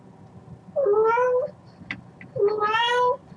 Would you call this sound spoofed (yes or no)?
no